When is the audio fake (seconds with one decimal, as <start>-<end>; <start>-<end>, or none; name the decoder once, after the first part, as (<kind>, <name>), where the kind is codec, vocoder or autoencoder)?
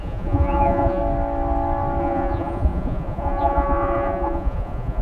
0.0-1.0 (vocoder, Vocos); 2.0-5.0